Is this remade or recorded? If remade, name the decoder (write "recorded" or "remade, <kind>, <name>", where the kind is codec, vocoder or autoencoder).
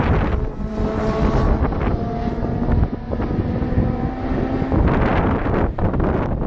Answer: recorded